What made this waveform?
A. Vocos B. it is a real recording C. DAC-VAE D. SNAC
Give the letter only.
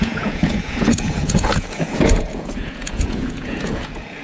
A